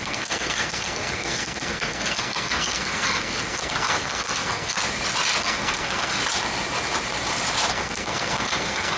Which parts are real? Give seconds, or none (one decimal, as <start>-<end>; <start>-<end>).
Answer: 4.8-5.4; 6.2-7.7